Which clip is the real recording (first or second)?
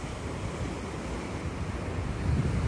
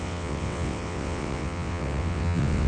first